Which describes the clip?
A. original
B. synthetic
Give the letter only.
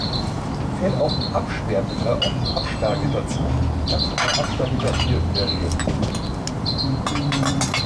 A